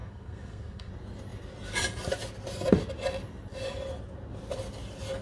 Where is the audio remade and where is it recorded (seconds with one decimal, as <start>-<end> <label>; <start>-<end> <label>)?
0.0-0.9 remade; 0.9-5.2 recorded